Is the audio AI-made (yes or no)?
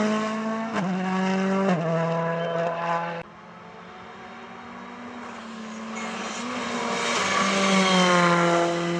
no